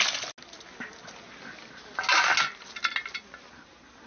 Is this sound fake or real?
real